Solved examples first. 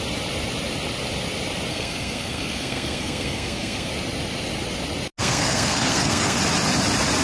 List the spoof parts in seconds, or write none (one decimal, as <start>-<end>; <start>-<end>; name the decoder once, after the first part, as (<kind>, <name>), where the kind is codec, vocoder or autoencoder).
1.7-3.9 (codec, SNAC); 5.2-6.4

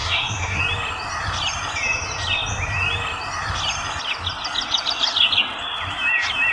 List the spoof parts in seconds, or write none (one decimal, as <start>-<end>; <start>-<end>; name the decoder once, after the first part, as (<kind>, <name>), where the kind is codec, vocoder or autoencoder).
0.0-0.6 (codec, SNAC)

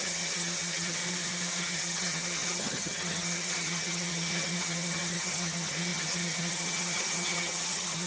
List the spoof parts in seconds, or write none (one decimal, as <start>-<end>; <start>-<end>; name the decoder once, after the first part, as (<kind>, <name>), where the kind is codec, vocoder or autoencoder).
0.0-1.0 (vocoder, HiFi-GAN); 1.6-8.1

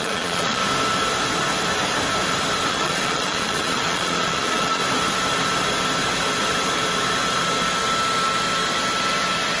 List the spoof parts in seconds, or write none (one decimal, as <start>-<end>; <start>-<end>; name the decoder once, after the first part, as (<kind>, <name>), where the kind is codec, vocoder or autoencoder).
0.0-0.6 (vocoder, Vocos); 2.7-4.8

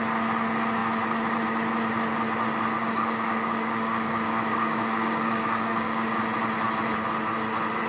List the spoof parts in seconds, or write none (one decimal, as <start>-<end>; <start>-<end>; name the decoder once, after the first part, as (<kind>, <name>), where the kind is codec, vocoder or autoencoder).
2.8-6.2 (codec, DAC)

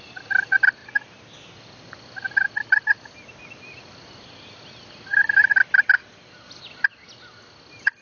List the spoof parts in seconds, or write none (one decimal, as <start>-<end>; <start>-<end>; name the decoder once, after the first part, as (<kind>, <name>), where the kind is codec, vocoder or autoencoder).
none